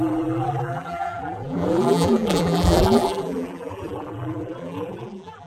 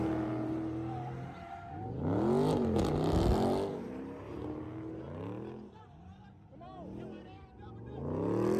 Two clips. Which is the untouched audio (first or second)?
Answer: second